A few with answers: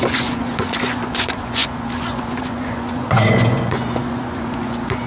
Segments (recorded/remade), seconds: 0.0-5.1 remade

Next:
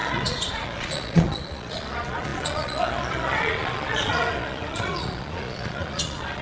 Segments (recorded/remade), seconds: 0.0-6.4 remade

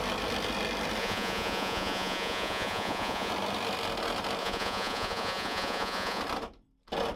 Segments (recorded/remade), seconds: 0.0-1.0 recorded; 1.0-3.3 remade; 3.3-4.4 recorded; 4.4-6.2 remade; 6.2-7.2 recorded

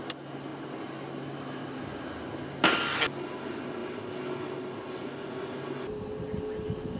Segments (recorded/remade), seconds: 0.0-7.0 recorded

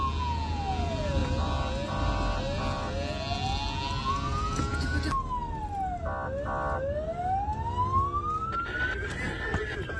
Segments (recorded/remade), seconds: 0.0-10.0 recorded

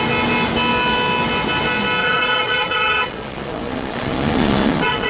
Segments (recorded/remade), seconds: 0.0-2.0 recorded; 2.0-5.1 remade

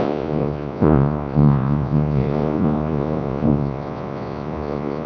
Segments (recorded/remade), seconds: 0.0-5.1 remade

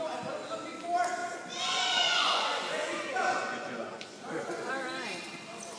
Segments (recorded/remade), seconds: 0.0-1.2 recorded; 1.2-4.7 remade; 4.7-5.8 recorded